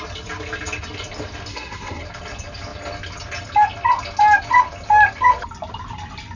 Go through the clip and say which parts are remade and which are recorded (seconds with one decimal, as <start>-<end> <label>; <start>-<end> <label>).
0.0-1.5 recorded; 1.5-2.0 remade; 2.0-6.4 recorded